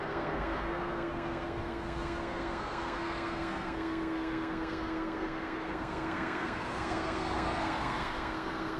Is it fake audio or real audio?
fake